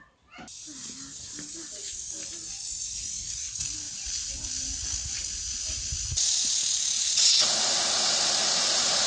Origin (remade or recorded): recorded